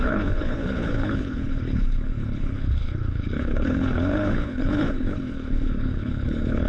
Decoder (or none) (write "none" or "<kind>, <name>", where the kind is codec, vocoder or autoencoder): codec, HILCodec